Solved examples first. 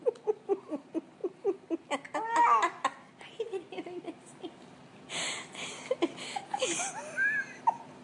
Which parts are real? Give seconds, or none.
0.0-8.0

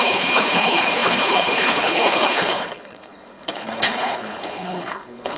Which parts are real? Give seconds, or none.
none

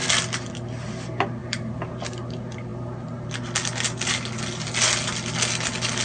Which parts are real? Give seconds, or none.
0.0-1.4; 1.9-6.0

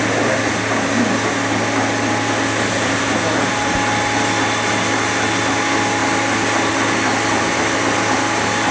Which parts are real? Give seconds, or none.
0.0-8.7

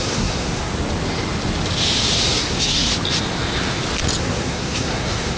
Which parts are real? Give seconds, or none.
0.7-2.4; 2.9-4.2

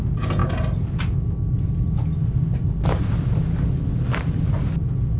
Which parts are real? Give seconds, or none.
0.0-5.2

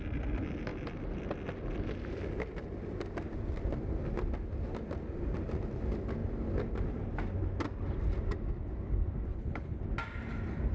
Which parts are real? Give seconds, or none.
0.0-9.3; 9.8-10.7